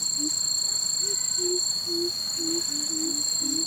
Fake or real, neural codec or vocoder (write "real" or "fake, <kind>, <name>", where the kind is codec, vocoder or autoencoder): real